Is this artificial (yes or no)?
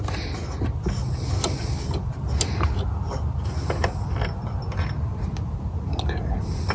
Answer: no